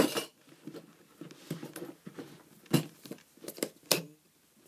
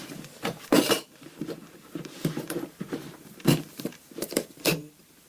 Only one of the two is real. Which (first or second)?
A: first